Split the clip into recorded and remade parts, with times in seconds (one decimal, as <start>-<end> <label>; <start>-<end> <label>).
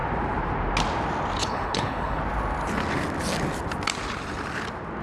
0.0-1.4 recorded; 1.4-2.2 remade; 2.2-5.0 recorded